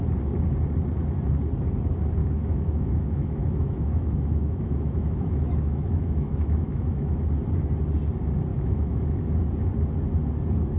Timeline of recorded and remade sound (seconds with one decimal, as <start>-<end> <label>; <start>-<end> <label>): 0.0-2.2 recorded; 2.2-7.2 remade; 7.2-8.5 recorded; 8.5-9.4 remade; 9.4-10.8 recorded